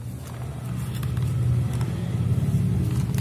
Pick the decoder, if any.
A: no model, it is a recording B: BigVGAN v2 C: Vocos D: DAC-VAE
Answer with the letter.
A